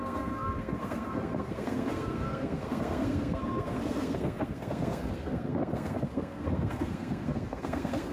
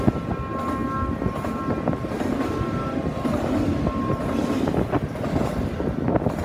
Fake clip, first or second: first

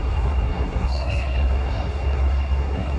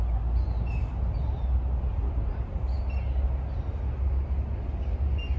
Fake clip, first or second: first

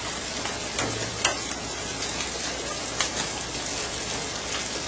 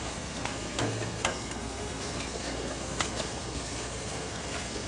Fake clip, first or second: second